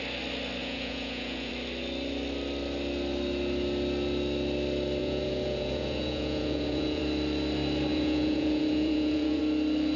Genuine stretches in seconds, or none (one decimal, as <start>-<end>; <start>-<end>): 0.0-0.6; 1.5-5.0; 7.0-7.9; 9.4-10.0